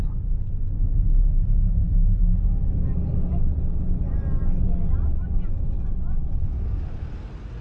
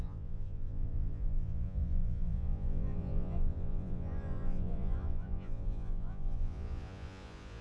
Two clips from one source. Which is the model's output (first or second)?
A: second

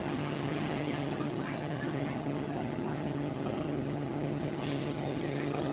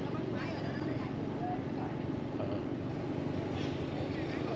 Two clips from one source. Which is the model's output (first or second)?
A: first